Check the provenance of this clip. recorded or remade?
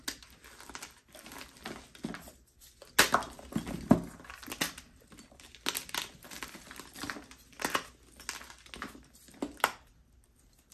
recorded